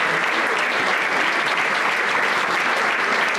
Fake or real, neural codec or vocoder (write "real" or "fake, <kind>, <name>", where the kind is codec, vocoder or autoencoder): real